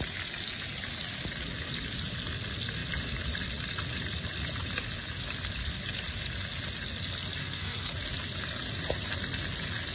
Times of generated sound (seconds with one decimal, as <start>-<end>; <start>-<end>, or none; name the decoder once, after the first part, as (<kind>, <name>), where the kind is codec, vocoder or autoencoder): 7.4-7.9 (codec, SNAC)